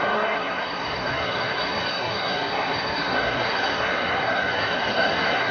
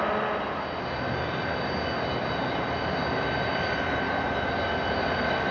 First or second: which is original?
second